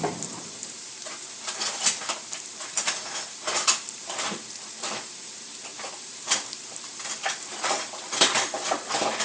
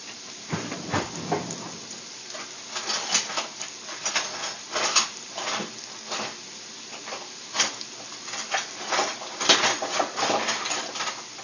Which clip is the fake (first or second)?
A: first